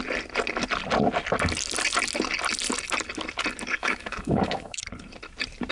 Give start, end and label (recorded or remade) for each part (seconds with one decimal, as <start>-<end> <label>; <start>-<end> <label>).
0.0-3.8 recorded; 3.8-4.8 remade; 4.8-5.7 recorded